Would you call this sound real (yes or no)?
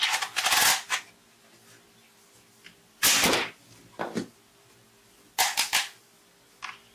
yes